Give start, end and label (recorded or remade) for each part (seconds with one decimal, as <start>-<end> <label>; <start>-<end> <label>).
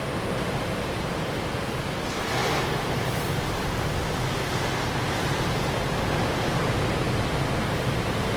0.0-8.4 recorded